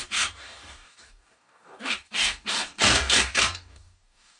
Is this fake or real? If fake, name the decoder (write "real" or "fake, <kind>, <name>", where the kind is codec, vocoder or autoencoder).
fake, codec, DAC